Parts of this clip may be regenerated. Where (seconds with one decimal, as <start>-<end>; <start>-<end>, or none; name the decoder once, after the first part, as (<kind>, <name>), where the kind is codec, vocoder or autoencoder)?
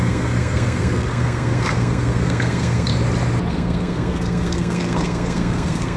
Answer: 0.0-2.9 (codec, SNAC); 3.5-6.0